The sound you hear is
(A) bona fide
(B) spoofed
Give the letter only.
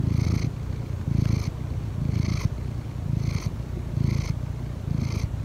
A